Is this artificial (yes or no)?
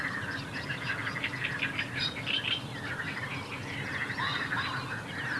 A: no